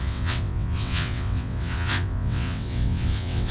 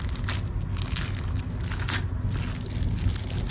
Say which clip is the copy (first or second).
first